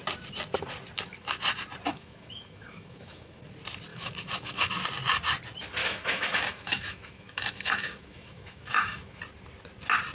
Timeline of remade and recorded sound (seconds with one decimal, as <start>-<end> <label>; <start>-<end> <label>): 0.0-1.9 recorded; 1.9-3.4 remade; 3.4-3.9 recorded; 3.9-4.7 remade; 4.7-5.8 recorded; 5.8-9.2 remade; 9.2-10.1 recorded